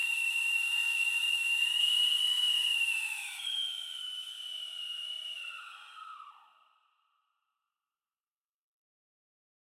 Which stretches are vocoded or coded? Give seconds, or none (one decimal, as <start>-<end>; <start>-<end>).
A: 0.0-1.8; 2.2-4.3